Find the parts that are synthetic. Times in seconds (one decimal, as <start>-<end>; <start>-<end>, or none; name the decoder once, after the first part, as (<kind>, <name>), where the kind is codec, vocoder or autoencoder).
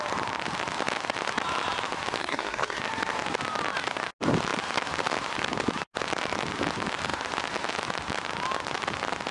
2.2-2.8 (codec, SNAC)